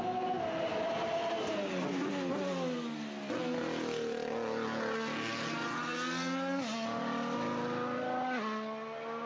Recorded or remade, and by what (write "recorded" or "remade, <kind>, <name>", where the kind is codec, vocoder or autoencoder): recorded